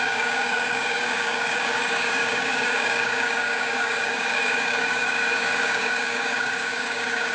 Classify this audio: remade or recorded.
remade